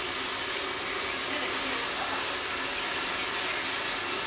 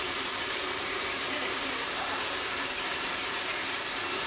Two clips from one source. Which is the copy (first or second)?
second